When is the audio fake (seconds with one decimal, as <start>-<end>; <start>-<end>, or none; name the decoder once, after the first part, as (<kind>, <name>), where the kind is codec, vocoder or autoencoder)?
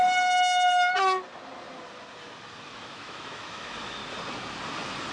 2.7-4.0 (autoencoder, DAC-VAE)